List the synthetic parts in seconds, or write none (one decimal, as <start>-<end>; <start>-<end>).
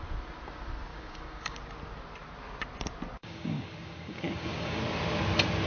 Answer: 0.9-1.6; 3.2-4.8